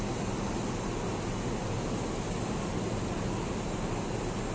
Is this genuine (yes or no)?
yes